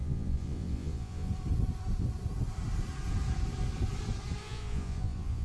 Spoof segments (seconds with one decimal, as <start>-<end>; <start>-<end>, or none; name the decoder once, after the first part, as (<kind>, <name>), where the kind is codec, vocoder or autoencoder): 0.0-1.3 (vocoder, Vocos); 4.4-5.4